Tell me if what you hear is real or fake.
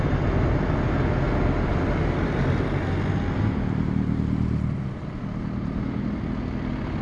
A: real